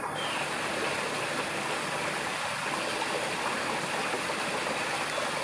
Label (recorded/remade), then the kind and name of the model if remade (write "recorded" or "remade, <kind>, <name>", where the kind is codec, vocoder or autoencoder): recorded